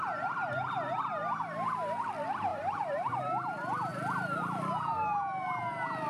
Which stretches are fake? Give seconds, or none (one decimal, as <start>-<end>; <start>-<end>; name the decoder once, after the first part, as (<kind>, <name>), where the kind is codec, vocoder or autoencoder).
2.5-3.2 (vocoder, BigVGAN v2)

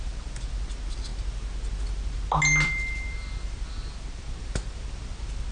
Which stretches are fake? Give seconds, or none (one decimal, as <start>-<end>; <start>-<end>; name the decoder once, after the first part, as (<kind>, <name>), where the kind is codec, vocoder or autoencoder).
none

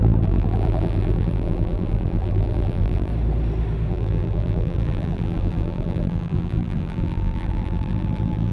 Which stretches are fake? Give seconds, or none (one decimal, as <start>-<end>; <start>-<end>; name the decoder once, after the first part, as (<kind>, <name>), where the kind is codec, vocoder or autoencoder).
0.0-3.1 (vocoder, BigVGAN v2); 3.9-8.5

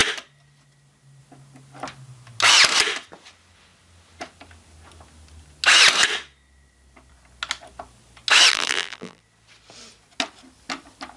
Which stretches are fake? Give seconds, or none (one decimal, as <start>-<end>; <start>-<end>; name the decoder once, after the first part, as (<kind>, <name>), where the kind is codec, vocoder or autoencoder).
8.5-9.2 (vocoder, BigVGAN v2)

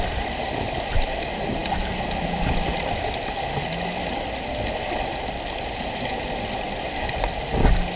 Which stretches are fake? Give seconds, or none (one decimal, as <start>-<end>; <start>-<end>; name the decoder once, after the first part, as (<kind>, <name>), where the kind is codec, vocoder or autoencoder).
1.6-2.1 (vocoder, BigVGAN v2)